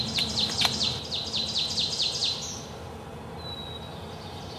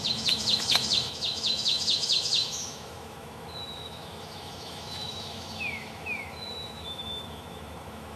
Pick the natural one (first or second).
first